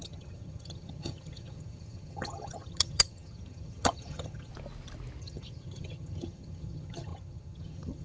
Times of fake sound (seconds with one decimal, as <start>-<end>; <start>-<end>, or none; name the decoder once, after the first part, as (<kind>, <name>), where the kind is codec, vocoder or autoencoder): 0.0-4.5 (vocoder, HiFi-GAN); 5.2-8.0